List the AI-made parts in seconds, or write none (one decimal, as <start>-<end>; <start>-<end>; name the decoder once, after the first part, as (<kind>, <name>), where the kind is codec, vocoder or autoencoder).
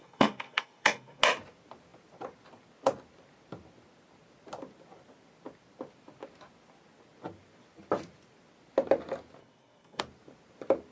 0.0-1.2 (codec, SNAC); 9.4-10.0